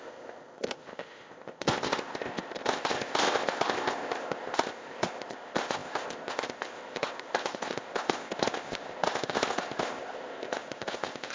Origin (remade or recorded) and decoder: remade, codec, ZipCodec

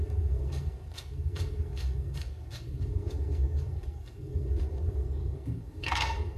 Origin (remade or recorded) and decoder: remade, codec, SNAC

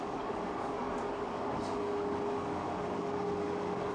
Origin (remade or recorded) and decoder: remade, codec, DAC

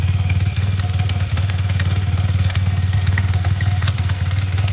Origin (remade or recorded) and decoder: remade, codec, SNAC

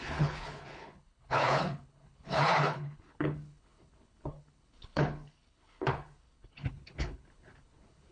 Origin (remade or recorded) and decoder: remade, codec, HILCodec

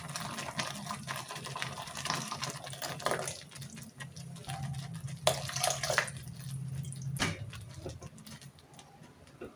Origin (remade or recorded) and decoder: recorded